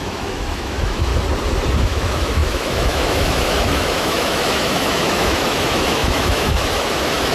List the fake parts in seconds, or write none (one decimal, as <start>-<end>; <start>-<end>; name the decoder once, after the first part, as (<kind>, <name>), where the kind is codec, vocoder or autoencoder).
0.0-1.1 (autoencoder, DAC-VAE); 1.8-7.3